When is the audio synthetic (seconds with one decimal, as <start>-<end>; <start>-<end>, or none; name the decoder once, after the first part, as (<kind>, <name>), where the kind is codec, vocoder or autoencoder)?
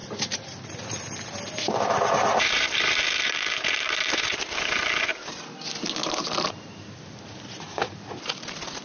none